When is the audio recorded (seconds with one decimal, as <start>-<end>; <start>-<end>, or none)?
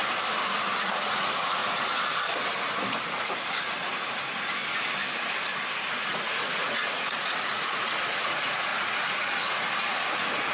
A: 0.0-0.8; 1.6-2.9; 4.3-5.9